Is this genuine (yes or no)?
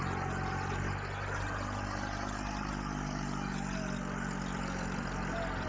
yes